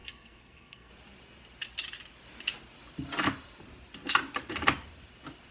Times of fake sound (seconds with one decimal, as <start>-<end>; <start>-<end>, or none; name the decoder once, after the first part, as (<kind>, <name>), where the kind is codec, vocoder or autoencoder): 0.0-0.9 (codec, SNAC)